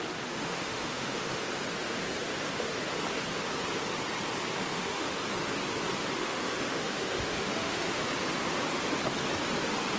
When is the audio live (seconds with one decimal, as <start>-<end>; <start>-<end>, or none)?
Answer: 1.4-4.5; 5.2-6.2; 8.0-10.0